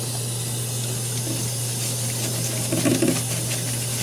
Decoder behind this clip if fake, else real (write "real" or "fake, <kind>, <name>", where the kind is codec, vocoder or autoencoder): real